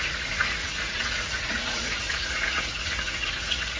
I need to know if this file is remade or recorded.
remade